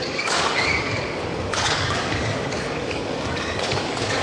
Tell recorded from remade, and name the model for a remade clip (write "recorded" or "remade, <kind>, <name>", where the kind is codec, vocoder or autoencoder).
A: remade, codec, DAC